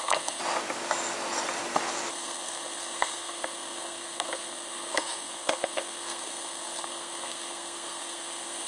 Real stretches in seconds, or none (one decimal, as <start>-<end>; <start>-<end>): 0.4-2.1